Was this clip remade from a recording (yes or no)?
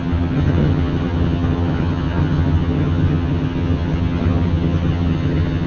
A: yes